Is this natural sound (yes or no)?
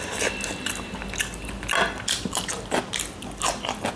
yes